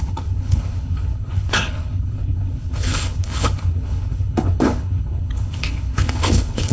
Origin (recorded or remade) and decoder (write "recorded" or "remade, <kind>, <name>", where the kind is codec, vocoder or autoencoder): remade, codec, HILCodec